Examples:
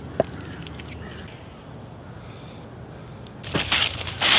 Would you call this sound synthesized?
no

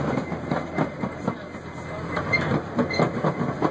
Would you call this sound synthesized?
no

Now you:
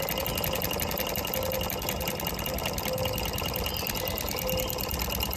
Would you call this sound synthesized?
no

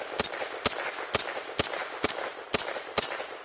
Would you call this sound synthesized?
no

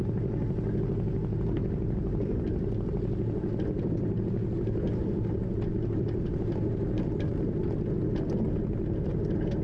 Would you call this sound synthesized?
no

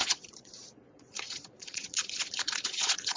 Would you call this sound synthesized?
yes